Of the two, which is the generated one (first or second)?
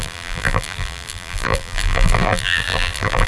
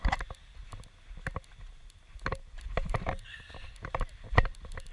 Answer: first